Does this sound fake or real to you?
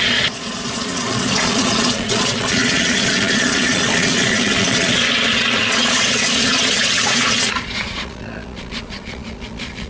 fake